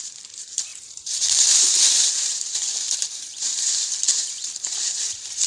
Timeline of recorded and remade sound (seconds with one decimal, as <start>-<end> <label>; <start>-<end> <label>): 0.0-5.5 remade